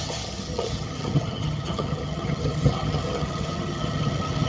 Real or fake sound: fake